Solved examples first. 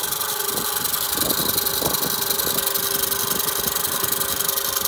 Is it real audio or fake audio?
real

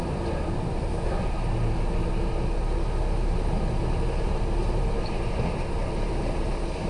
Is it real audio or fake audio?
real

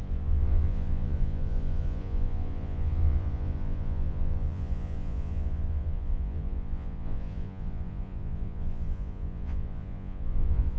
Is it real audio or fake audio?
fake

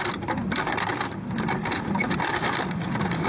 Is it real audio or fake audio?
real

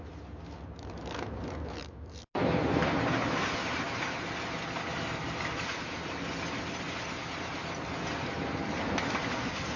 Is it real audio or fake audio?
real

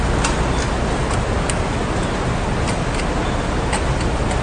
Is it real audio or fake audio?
real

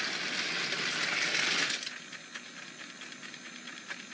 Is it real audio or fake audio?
real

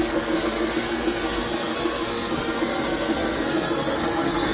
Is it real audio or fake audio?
fake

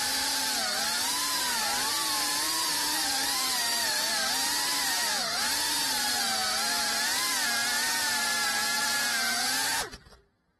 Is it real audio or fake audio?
real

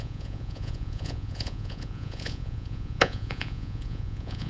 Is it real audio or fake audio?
fake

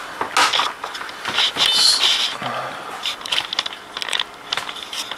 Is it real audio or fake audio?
real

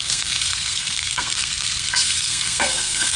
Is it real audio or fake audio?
fake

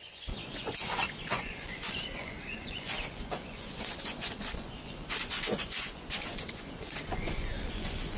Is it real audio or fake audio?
fake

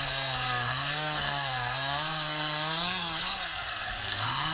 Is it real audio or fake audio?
fake